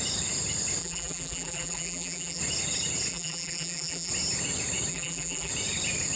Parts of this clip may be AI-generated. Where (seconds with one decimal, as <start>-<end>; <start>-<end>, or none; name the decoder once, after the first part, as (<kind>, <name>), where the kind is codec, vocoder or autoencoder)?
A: 0.8-2.4 (vocoder, BigVGAN v2); 3.1-4.1; 4.9-5.5